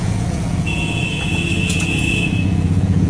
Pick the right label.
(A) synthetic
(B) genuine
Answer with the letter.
A